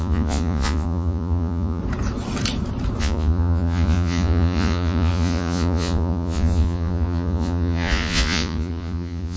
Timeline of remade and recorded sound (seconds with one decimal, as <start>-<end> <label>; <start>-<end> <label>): 0.0-1.8 remade; 1.8-3.0 recorded; 3.0-9.4 remade